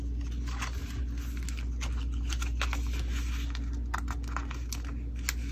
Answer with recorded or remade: recorded